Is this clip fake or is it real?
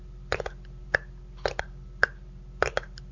real